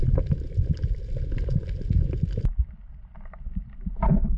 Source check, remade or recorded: recorded